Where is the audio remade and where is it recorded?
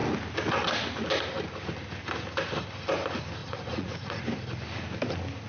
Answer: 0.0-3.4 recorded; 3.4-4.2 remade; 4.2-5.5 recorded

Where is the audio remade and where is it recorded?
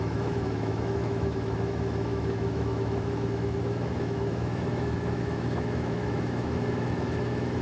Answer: 0.0-7.6 remade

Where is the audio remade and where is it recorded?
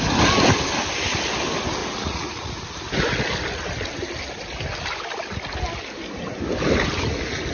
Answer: 0.0-1.8 recorded; 1.8-2.7 remade; 2.7-7.5 recorded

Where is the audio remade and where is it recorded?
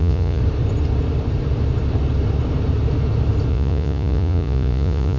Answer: 0.0-0.4 remade; 0.4-3.5 recorded; 3.5-5.2 remade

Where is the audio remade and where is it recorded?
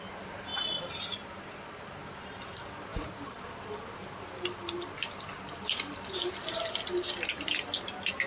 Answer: 0.0-0.5 remade; 0.5-1.8 recorded; 1.8-8.3 remade